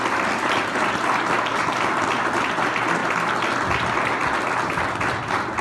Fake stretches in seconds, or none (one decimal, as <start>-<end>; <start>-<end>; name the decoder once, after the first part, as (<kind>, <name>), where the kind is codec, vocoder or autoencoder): none